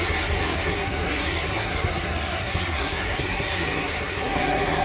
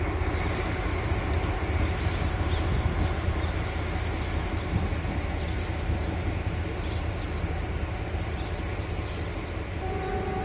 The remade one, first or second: first